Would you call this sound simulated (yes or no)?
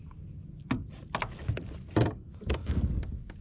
no